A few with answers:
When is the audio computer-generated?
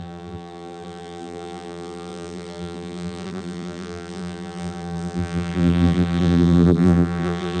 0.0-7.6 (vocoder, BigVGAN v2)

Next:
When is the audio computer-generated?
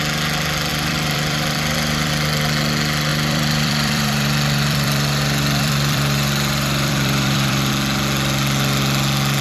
0.7-2.1 (vocoder, BigVGAN v2); 3.1-7.7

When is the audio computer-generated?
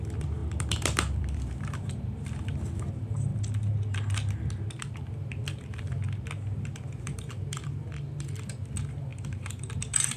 0.0-3.3 (vocoder, BigVGAN v2); 5.0-10.2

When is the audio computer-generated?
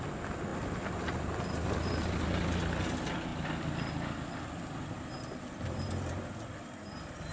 0.5-1.7 (vocoder, BigVGAN v2); 3.3-7.3